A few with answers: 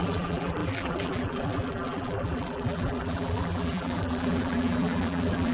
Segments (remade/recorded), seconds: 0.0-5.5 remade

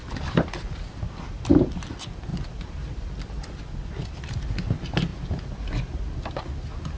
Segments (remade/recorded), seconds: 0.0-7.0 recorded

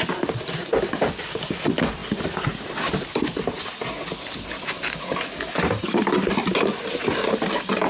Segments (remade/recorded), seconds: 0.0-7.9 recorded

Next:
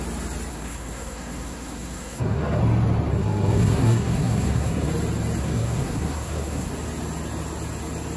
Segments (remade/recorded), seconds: 0.0-0.5 recorded; 0.5-2.6 remade; 2.6-3.1 recorded; 3.1-4.9 remade; 4.9-5.4 recorded; 5.4-6.7 remade; 6.7-8.2 recorded

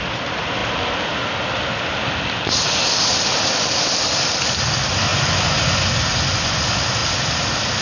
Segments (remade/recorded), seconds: 0.0-5.1 recorded; 5.1-6.6 remade; 6.6-7.8 recorded